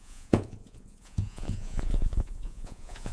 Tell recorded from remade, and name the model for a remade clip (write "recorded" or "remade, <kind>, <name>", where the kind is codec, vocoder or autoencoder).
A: remade, vocoder, Vocos